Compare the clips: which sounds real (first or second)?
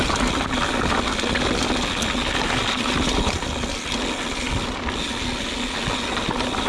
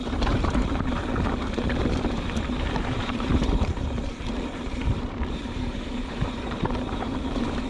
first